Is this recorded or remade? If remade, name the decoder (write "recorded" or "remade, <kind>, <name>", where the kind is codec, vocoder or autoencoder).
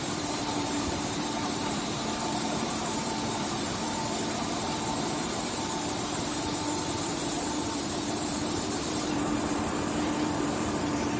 remade, vocoder, BigVGAN v2